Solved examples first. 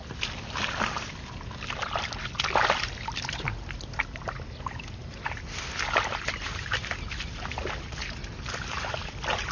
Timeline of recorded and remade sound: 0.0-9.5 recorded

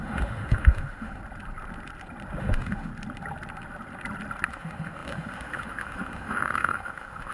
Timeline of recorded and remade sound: 0.0-1.2 remade; 1.2-2.4 recorded; 2.4-2.9 remade; 2.9-4.5 recorded; 4.5-7.3 remade

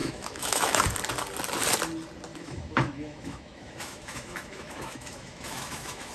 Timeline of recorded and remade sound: 0.0-0.8 remade; 0.8-2.3 recorded; 2.3-6.1 remade